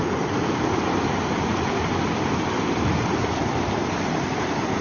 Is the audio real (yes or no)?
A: yes